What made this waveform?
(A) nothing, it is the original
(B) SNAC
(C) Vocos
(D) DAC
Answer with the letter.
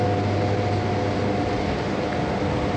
A